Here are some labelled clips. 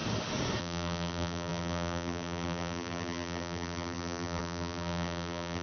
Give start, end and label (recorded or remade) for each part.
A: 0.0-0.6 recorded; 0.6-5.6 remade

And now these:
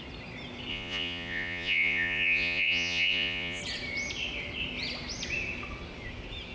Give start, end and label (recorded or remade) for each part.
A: 0.0-0.7 recorded; 0.7-3.6 remade; 3.6-6.5 recorded

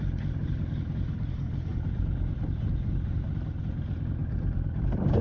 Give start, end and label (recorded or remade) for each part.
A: 0.0-1.7 recorded; 1.7-3.3 remade; 3.3-4.2 recorded; 4.2-5.2 remade

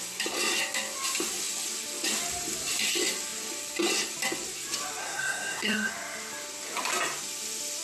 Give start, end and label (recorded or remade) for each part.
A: 0.0-5.0 recorded; 5.0-5.9 remade; 5.9-7.8 recorded

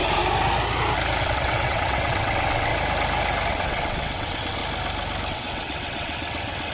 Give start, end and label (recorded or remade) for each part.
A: 0.0-1.2 recorded; 1.2-2.7 remade; 2.7-3.5 recorded; 3.5-4.6 remade; 4.6-5.3 recorded; 5.3-6.7 remade

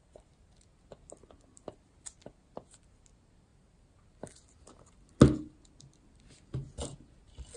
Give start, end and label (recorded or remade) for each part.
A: 0.0-7.6 recorded

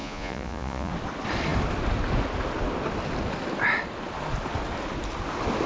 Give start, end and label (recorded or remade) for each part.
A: 0.0-0.9 remade; 0.9-5.7 recorded

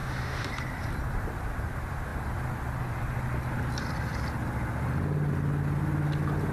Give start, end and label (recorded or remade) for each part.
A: 0.0-0.5 remade; 0.5-6.5 recorded